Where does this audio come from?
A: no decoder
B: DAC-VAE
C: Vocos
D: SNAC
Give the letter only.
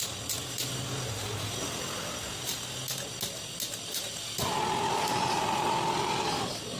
A